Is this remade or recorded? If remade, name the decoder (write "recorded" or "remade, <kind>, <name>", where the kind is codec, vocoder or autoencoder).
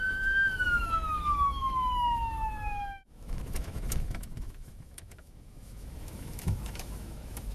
remade, autoencoder, DAC-VAE